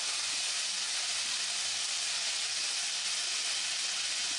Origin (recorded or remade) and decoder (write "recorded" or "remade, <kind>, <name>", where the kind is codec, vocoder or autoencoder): recorded